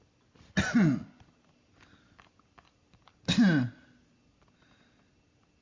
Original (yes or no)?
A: yes